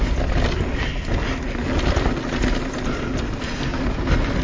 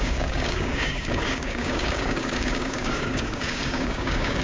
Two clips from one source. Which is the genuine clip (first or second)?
first